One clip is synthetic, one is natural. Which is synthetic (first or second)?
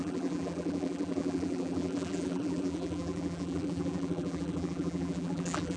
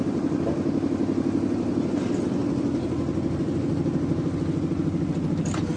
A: first